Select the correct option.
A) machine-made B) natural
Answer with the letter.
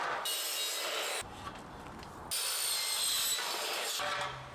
B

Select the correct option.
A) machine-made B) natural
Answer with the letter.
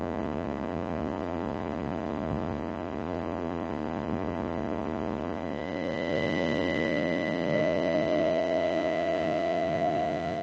A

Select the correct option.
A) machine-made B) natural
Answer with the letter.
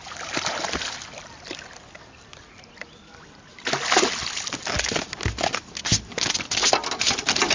B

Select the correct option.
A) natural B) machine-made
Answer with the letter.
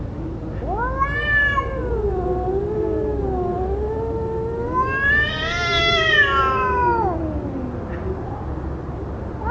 A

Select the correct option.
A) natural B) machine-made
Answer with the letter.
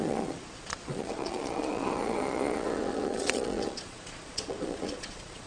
B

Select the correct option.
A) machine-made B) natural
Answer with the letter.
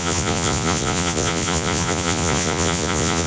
A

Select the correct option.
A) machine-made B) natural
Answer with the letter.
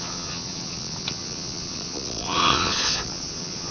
A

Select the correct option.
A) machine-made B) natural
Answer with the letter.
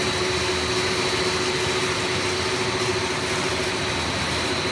B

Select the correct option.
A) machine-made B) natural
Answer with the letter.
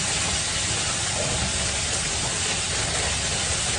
B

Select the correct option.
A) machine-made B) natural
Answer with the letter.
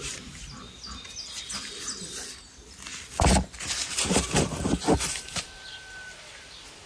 B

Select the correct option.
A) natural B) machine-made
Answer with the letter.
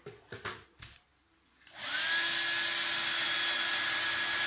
A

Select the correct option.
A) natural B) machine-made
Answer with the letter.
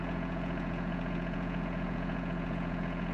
B